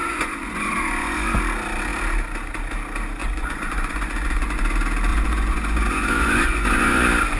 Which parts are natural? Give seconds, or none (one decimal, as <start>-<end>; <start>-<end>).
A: 1.4-3.2; 4.6-5.1; 7.0-7.4